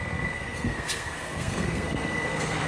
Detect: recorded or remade remade